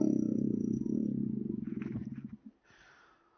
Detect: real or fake real